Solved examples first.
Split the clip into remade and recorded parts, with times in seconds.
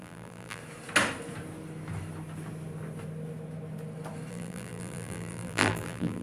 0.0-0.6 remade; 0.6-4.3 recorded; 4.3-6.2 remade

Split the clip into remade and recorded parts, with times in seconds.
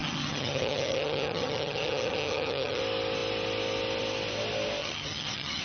0.0-2.8 remade; 2.8-4.8 recorded; 4.8-5.6 remade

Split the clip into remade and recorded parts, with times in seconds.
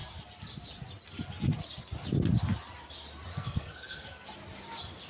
0.0-3.3 recorded; 3.3-4.3 remade; 4.3-5.1 recorded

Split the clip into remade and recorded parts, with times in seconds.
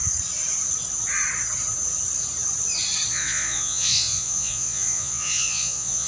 0.0-3.1 recorded; 3.1-6.1 remade